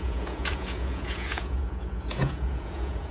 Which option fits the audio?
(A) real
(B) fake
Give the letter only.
B